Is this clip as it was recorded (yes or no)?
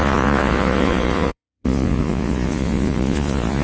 no